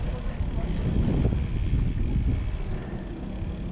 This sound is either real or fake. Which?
real